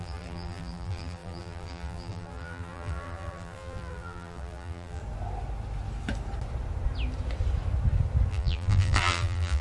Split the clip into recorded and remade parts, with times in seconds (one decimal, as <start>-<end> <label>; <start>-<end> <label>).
0.0-5.0 remade; 5.0-8.3 recorded; 8.3-9.6 remade

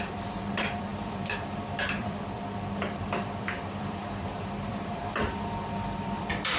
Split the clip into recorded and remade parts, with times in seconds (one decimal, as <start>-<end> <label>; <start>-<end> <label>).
0.0-6.6 remade

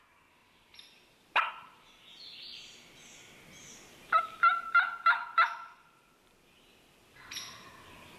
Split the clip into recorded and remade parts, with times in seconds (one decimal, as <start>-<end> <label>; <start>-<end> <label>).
0.0-0.4 recorded; 0.4-1.5 remade; 1.5-3.6 recorded; 3.6-7.7 remade; 7.7-8.2 recorded

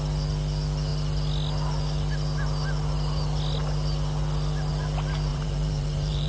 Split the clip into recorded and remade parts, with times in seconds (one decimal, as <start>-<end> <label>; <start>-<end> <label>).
0.0-5.3 recorded; 5.3-6.3 remade

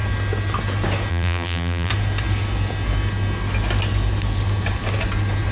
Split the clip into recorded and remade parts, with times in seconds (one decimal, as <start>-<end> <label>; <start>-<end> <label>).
0.0-1.1 recorded; 1.1-1.9 remade; 1.9-5.5 recorded